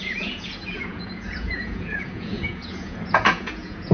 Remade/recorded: remade